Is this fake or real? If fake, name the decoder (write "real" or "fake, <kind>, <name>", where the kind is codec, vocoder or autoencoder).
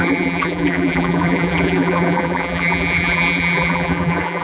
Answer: fake, vocoder, BigVGAN v2